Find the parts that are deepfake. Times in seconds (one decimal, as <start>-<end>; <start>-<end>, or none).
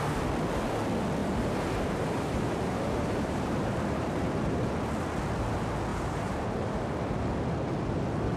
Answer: 1.2-4.8; 5.9-7.3